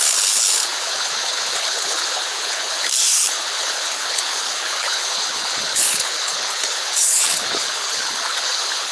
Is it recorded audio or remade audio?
remade